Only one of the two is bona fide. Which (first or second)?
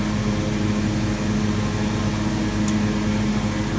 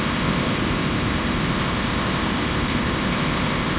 first